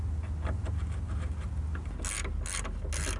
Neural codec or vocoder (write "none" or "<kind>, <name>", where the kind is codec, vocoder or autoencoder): none